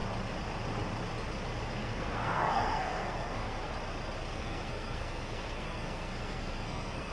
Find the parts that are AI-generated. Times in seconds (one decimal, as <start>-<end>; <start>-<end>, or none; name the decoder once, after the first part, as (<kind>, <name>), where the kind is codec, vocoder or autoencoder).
1.8-3.7 (codec, SNAC); 4.2-7.1